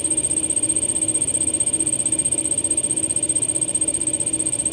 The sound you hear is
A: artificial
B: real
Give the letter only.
B